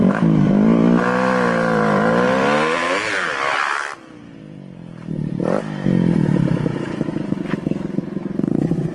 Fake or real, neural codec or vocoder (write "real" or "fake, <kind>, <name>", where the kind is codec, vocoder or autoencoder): fake, vocoder, BigVGAN v2